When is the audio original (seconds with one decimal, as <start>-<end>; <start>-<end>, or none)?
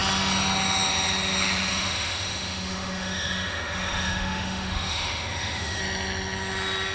0.0-1.7; 5.8-6.9